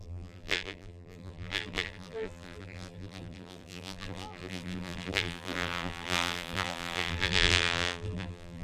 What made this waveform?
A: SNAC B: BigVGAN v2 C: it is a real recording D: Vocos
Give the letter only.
B